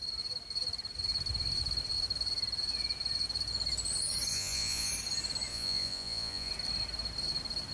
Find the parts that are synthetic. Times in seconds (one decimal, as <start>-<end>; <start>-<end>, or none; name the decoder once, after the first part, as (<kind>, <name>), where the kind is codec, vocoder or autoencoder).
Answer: 4.3-4.9 (vocoder, Vocos); 5.5-6.5